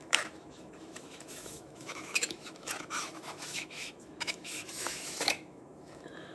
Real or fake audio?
fake